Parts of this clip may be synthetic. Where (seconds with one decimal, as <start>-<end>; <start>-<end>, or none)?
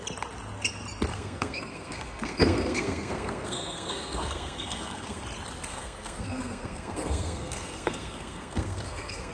1.1-5.2; 5.7-9.3